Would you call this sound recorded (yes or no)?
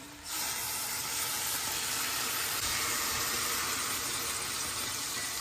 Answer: no